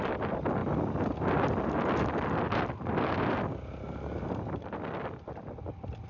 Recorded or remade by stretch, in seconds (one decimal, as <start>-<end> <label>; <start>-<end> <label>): 0.0-0.6 remade; 0.6-4.3 recorded; 4.3-6.1 remade